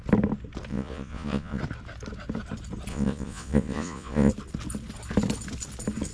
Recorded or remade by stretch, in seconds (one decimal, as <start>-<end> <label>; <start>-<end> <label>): 0.0-0.7 recorded; 0.7-1.6 remade; 1.6-2.9 recorded; 2.9-4.3 remade; 4.3-6.1 recorded